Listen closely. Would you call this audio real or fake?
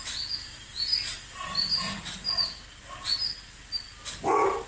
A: real